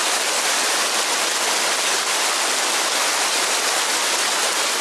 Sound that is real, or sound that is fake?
real